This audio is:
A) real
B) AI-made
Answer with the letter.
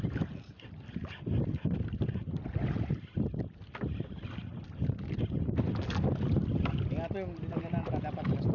A